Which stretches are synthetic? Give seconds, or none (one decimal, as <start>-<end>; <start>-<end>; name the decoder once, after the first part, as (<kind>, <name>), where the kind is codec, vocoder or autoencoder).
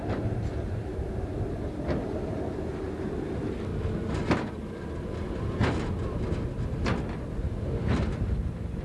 none